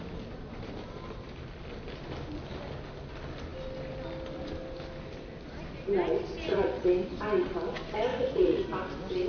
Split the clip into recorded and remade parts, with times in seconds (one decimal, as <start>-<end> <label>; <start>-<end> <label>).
0.0-6.4 recorded; 6.4-6.9 remade; 6.9-8.1 recorded; 8.1-8.6 remade; 8.6-9.3 recorded